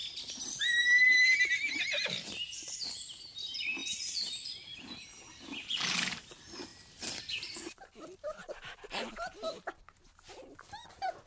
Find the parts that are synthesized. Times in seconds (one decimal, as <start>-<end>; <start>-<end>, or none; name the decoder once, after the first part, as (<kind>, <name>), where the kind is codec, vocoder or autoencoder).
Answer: 0.6-6.7 (vocoder, BigVGAN v2); 7.4-9.3; 10.6-11.3